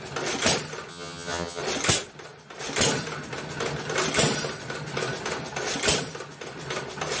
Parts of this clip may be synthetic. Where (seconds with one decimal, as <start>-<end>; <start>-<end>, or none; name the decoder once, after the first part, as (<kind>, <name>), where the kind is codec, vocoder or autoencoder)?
0.9-1.6 (vocoder, HiFi-GAN)